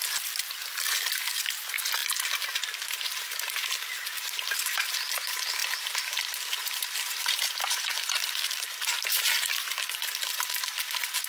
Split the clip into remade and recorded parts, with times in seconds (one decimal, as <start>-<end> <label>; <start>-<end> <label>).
0.0-0.6 recorded; 0.6-1.3 remade; 1.3-5.6 recorded; 5.6-10.5 remade; 10.5-11.3 recorded